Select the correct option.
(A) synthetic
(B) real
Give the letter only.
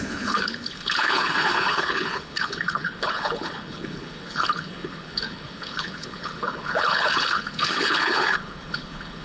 A